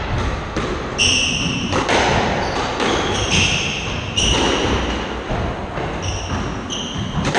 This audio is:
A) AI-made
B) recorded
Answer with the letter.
B